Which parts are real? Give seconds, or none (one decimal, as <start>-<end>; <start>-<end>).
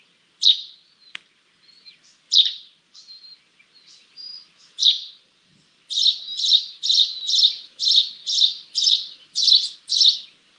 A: 0.0-4.8; 5.8-10.6